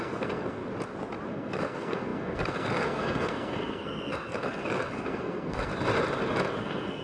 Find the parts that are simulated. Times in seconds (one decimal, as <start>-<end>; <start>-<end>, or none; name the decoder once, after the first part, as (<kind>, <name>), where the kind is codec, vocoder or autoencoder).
0.0-0.6 (codec, SNAC); 1.3-5.7; 6.6-7.0